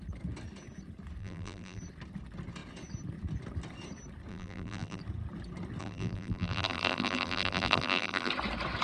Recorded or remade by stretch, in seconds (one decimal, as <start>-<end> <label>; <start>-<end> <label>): 0.0-1.2 recorded; 1.2-1.8 remade; 1.8-4.3 recorded; 4.3-5.0 remade; 5.0-5.8 recorded; 5.8-8.3 remade; 8.3-8.8 recorded